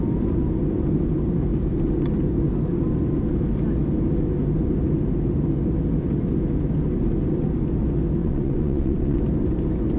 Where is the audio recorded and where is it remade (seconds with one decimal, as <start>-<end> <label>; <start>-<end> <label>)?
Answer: 0.0-8.2 recorded; 8.2-9.2 remade; 9.2-10.0 recorded